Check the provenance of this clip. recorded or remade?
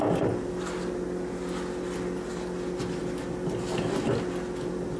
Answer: recorded